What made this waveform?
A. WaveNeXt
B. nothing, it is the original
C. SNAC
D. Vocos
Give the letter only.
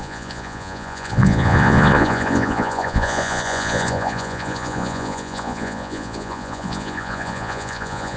D